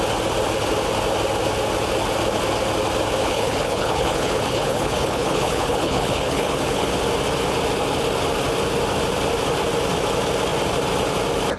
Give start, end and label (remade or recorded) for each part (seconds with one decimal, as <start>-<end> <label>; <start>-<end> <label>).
0.0-3.2 recorded; 3.2-6.9 remade; 6.9-11.6 recorded